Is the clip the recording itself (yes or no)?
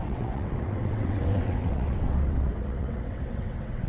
no